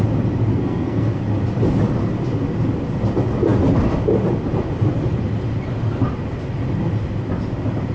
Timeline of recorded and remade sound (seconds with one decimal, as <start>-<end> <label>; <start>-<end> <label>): 0.0-0.5 recorded; 0.5-1.2 remade; 1.2-7.9 recorded